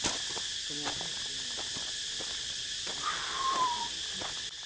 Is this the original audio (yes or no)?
yes